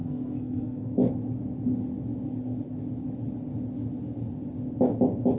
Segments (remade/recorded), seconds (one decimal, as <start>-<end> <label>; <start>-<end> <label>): 0.0-1.1 remade; 1.1-5.4 recorded